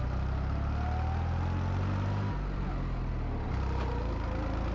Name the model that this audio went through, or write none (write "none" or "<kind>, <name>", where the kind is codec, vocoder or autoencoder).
none